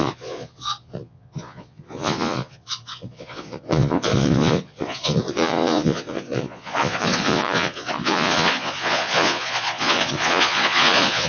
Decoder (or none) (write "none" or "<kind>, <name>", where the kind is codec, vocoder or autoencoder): vocoder, Vocos